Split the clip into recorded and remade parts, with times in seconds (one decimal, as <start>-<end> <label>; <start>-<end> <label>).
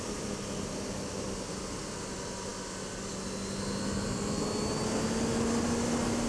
0.0-6.3 recorded